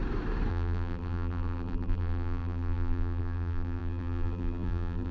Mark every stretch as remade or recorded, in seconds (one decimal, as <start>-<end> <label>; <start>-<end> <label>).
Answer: 0.0-0.5 recorded; 0.5-5.1 remade